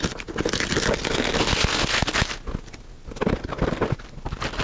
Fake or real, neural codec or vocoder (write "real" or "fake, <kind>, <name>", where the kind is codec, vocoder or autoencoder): real